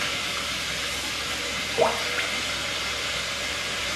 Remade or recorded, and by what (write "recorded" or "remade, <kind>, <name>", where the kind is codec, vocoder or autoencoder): recorded